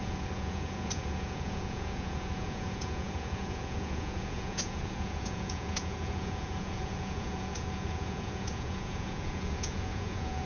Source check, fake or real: fake